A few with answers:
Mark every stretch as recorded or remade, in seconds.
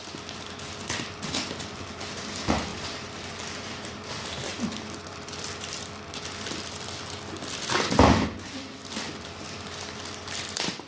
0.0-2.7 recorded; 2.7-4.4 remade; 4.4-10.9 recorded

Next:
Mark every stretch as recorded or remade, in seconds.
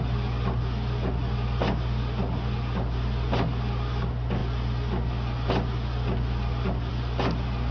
0.0-7.7 recorded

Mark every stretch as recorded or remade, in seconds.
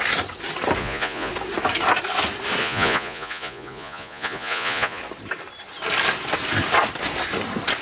0.0-0.8 recorded; 0.8-1.3 remade; 1.3-2.6 recorded; 2.6-5.0 remade; 5.0-7.8 recorded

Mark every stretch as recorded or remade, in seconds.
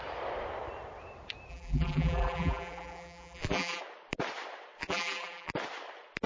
0.0-1.5 recorded; 1.5-3.8 remade; 3.8-4.8 recorded; 4.8-5.5 remade; 5.5-6.3 recorded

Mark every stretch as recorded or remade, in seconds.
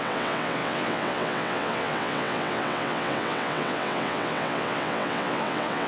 0.0-5.9 remade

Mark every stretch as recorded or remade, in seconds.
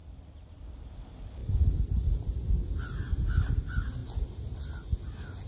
0.0-5.5 recorded